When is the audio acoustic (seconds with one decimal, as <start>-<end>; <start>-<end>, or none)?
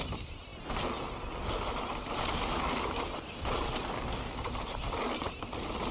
0.0-5.9